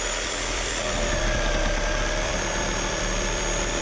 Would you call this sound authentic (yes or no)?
no